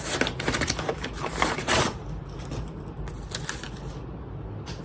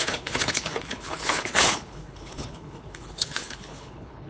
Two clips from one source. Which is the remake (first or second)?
second